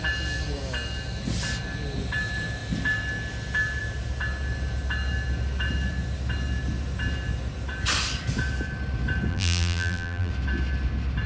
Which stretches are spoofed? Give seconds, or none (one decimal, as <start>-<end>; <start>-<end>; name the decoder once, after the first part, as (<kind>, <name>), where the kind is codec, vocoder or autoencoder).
9.3-10.3 (vocoder, BigVGAN v2)